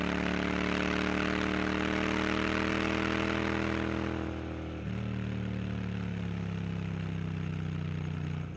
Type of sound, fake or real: real